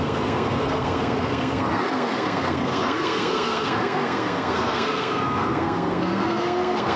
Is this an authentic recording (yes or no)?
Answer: no